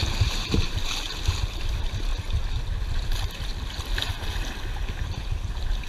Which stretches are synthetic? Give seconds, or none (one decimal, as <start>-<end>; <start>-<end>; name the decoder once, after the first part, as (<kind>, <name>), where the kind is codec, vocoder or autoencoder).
0.0-2.1 (vocoder, BigVGAN v2); 4.8-5.9